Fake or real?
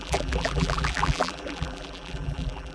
fake